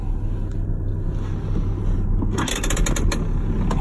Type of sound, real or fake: real